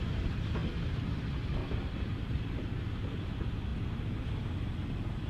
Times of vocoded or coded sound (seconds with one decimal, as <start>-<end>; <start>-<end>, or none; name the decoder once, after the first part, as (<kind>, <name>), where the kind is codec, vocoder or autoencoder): 1.6-3.3 (vocoder, BigVGAN v2); 3.7-4.4